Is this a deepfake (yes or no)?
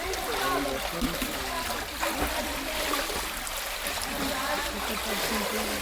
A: no